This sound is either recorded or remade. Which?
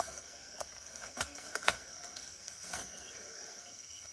remade